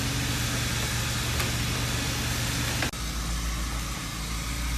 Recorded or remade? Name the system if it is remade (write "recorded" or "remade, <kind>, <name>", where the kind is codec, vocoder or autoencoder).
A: recorded